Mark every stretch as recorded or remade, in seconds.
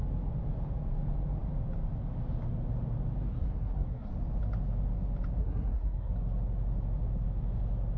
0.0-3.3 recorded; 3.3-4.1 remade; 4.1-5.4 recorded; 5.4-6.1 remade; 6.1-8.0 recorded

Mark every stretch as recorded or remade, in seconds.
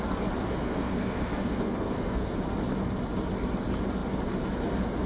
0.0-0.6 recorded; 0.6-2.4 remade; 2.4-5.1 recorded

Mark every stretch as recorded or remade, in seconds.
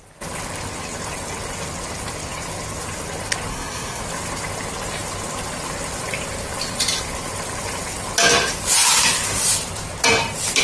0.0-3.5 recorded; 3.5-4.0 remade; 4.0-10.6 recorded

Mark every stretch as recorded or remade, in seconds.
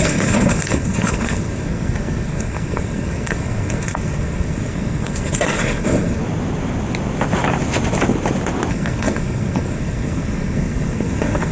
0.0-6.2 remade; 6.2-8.7 recorded; 8.7-11.5 remade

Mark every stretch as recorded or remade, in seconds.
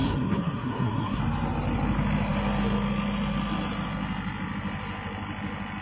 0.0-1.2 remade; 1.2-5.8 recorded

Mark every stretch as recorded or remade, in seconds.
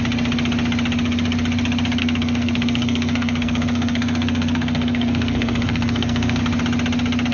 0.0-2.0 recorded; 2.0-6.4 remade; 6.4-7.3 recorded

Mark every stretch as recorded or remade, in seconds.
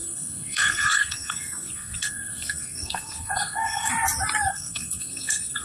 0.0-3.9 remade; 3.9-4.5 recorded; 4.5-5.6 remade